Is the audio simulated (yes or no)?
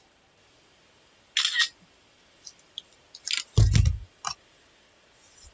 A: no